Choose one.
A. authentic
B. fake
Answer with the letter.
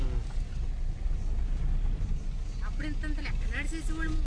A